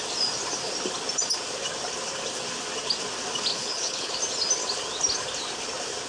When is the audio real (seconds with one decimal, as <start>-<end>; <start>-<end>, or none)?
0.0-3.5; 4.1-6.1